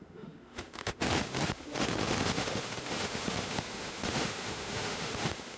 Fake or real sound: fake